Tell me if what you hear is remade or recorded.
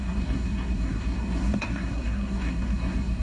remade